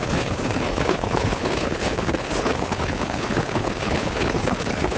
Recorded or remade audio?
remade